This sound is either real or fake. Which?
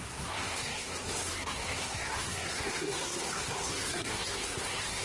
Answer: fake